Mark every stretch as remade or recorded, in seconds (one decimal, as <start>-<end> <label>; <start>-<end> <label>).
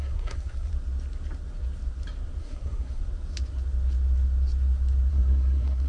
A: 0.0-0.7 remade; 0.7-2.4 recorded; 2.4-3.0 remade; 3.0-5.1 recorded; 5.1-5.9 remade